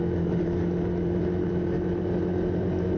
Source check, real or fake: fake